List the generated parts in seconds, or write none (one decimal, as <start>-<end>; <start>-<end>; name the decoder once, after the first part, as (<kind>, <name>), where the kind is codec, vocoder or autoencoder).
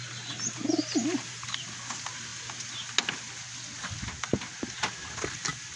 none